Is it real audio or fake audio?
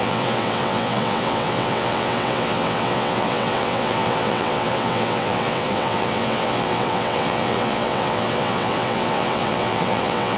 fake